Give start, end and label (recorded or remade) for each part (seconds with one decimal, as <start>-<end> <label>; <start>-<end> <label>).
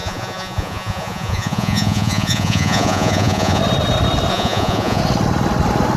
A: 0.0-3.6 remade; 3.6-4.3 recorded; 4.3-5.0 remade; 5.0-6.0 recorded